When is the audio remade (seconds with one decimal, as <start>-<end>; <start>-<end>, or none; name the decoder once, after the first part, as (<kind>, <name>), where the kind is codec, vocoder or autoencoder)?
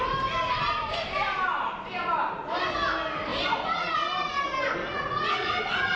3.3-3.9 (vocoder, Vocos); 4.8-6.0